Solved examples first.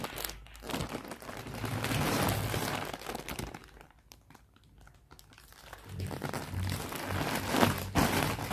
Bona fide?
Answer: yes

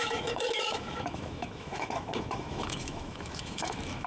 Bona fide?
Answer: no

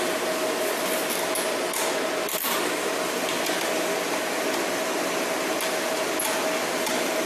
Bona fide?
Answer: yes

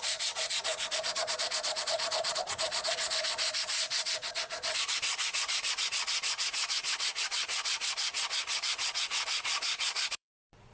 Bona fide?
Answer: no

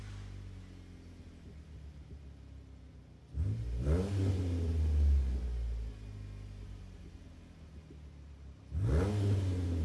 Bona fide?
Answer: yes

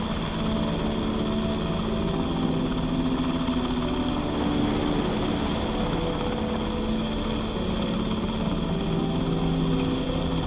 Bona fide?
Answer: yes